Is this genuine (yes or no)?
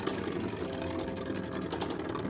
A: yes